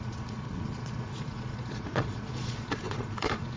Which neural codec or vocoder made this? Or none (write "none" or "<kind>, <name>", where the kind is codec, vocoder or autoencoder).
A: vocoder, Vocos